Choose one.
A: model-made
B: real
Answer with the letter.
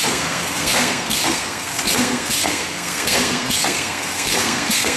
A